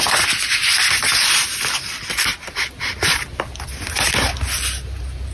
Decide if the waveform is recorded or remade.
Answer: recorded